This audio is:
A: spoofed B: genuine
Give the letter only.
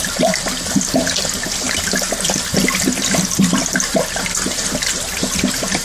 B